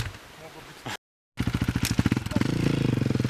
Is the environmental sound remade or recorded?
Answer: recorded